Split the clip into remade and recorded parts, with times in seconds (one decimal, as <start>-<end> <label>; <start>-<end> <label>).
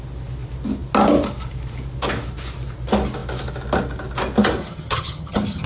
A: 0.0-4.6 recorded; 4.6-5.7 remade